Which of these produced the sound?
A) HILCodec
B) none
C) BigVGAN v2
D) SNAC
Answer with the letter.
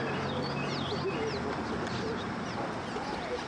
B